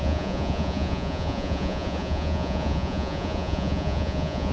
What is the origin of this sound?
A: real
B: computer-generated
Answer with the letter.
B